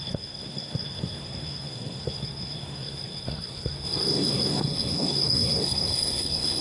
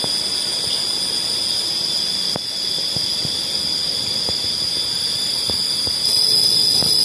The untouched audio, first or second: second